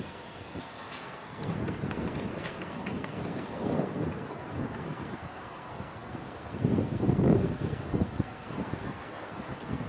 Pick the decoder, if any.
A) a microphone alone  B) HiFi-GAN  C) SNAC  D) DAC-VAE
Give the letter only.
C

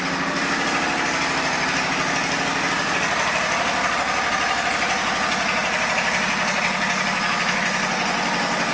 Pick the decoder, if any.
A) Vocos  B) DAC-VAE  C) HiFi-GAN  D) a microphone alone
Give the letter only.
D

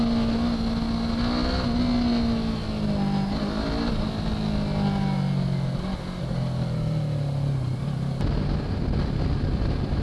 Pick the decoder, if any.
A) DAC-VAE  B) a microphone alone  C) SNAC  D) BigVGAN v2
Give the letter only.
B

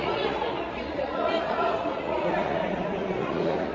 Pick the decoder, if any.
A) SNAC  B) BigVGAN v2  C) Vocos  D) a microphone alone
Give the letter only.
C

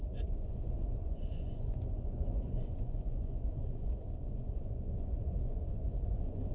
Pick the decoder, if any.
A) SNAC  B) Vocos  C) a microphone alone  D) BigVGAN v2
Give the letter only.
B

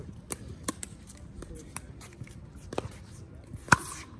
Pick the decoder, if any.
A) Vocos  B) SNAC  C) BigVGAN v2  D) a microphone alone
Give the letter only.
C